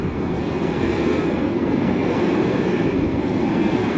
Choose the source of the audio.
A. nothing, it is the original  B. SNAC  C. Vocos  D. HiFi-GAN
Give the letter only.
B